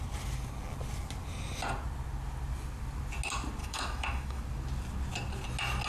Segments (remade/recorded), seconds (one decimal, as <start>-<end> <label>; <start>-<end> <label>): 0.0-3.6 recorded; 3.6-4.4 remade; 4.4-5.9 recorded

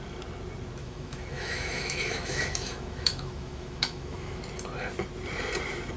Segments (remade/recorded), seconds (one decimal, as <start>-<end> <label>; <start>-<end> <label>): 0.0-0.8 recorded; 0.8-4.4 remade; 4.4-6.0 recorded

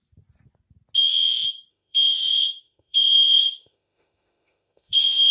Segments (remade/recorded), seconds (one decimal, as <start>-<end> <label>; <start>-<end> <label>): 0.0-1.7 recorded; 1.7-5.3 remade

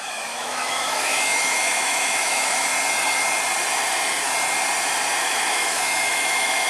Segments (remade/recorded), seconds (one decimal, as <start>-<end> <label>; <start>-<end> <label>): 0.0-2.7 remade; 2.7-5.2 recorded; 5.2-6.7 remade

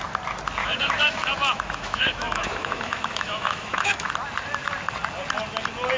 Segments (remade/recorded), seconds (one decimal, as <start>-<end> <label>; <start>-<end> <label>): 0.0-0.6 recorded; 0.6-4.1 remade; 4.1-6.0 recorded

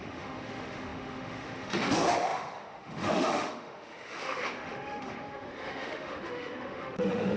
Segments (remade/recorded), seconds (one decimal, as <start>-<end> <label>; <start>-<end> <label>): 0.0-7.4 remade

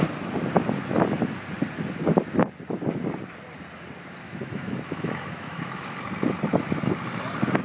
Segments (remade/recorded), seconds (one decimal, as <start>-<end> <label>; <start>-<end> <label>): 0.0-4.2 recorded; 4.2-6.0 remade; 6.0-7.6 recorded